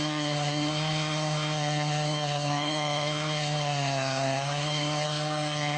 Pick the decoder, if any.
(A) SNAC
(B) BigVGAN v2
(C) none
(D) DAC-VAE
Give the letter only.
A